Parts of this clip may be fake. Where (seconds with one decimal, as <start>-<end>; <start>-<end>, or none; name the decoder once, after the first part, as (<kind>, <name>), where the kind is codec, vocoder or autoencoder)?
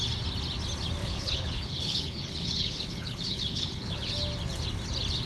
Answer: 1.0-4.1 (codec, HILCodec)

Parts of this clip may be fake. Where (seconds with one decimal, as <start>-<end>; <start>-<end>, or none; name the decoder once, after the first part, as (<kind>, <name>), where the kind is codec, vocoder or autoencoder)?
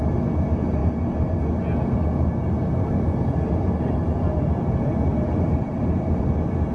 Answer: 5.1-6.2 (vocoder, BigVGAN v2)